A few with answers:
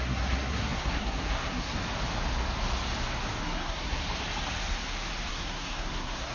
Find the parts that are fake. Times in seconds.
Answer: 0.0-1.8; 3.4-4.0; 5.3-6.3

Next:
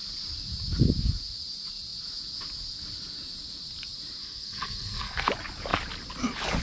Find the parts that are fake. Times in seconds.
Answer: 4.2-5.3